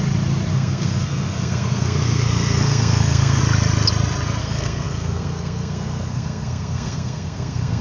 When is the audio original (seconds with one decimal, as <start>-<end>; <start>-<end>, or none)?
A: 0.0-0.5; 3.4-4.4